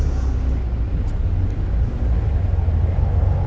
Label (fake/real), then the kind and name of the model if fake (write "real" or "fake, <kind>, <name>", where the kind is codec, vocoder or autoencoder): real